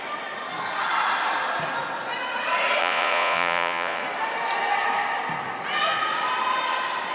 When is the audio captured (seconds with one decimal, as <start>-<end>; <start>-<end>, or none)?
0.0-2.8; 4.0-7.1